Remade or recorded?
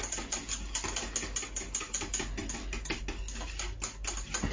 recorded